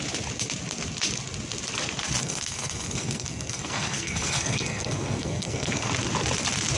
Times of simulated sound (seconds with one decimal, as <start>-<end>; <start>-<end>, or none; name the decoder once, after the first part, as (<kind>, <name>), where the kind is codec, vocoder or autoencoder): 2.2-5.9 (codec, SNAC)